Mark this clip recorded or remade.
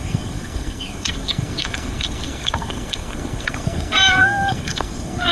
remade